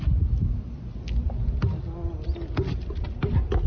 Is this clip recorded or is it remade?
recorded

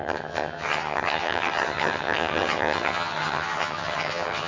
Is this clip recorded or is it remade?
remade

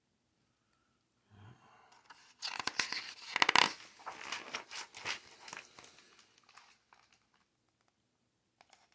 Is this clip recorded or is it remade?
recorded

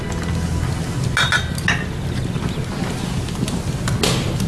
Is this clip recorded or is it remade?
recorded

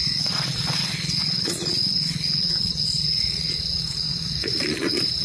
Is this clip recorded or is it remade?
remade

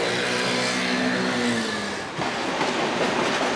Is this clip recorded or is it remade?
recorded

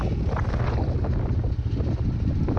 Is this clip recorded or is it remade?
recorded